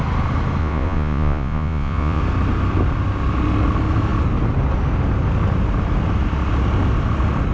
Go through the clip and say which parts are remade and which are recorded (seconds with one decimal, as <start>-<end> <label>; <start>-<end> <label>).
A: 0.0-0.6 recorded; 0.6-2.2 remade; 2.2-7.5 recorded